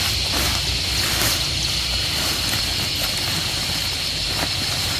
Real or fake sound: real